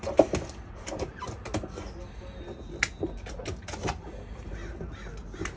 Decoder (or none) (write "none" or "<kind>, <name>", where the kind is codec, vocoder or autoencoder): none